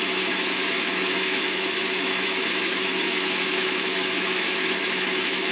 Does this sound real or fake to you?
fake